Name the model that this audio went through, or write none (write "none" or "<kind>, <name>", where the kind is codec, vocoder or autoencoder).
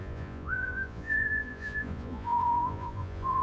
vocoder, Vocos